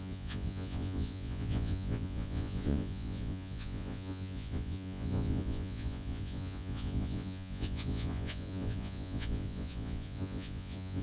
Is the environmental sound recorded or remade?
remade